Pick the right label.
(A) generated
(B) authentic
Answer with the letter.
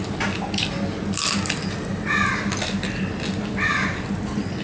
B